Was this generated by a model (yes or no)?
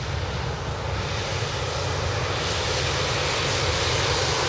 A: no